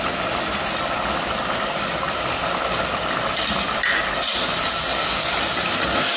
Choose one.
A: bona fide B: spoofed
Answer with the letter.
A